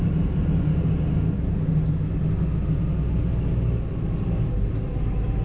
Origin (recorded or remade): recorded